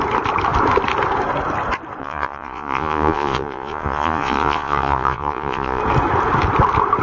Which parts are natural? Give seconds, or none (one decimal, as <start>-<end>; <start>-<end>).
0.0-2.0; 5.8-7.0